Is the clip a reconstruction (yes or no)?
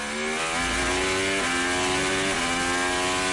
no